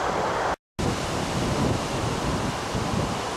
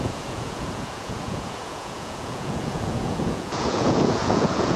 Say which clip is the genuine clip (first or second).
first